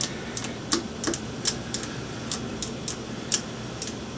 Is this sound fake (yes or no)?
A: no